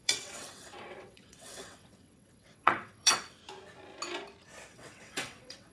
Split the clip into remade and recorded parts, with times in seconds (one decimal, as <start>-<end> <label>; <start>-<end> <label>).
0.0-3.4 remade; 3.4-4.7 recorded; 4.7-5.7 remade